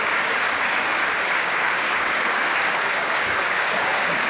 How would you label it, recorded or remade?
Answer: remade